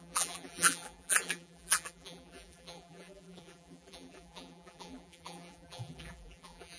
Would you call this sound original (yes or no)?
no